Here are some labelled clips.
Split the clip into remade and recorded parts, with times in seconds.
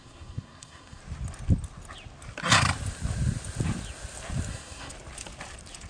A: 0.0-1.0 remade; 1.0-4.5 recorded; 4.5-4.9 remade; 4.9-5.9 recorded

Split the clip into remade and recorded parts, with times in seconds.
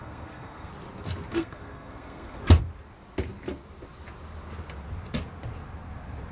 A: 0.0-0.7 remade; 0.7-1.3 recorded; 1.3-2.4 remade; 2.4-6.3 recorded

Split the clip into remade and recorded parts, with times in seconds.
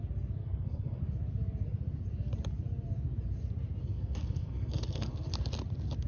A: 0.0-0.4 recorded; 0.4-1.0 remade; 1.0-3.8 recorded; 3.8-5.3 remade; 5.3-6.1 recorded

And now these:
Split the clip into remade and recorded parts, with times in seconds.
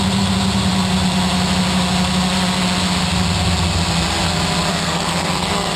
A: 0.0-4.7 recorded; 4.7-5.8 remade